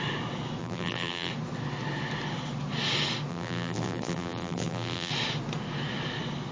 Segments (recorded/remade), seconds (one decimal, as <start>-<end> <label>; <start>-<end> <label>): 0.0-0.6 recorded; 0.6-1.3 remade; 1.3-3.3 recorded; 3.3-5.1 remade; 5.1-6.5 recorded